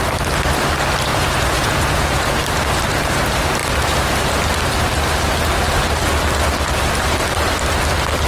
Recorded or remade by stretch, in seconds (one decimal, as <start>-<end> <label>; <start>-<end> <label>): 0.0-1.1 recorded; 1.1-2.4 remade; 2.4-8.3 recorded